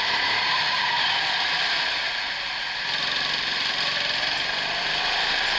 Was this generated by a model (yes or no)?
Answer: no